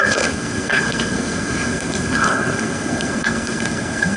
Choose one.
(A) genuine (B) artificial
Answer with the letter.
B